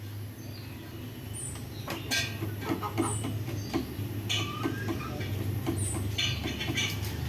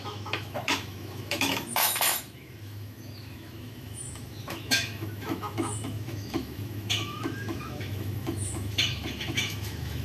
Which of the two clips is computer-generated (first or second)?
second